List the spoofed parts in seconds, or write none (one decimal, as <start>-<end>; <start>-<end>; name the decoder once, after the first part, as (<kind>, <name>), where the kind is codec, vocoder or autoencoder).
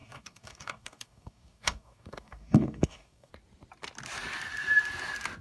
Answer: 0.0-3.3 (codec, DAC)